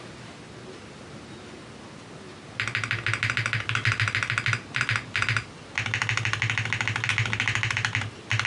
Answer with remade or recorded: recorded